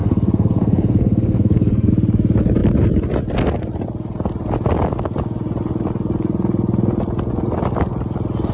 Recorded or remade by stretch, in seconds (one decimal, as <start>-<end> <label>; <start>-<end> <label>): 0.0-1.9 remade; 1.9-8.5 recorded